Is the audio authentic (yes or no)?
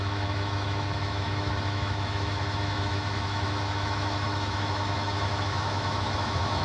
no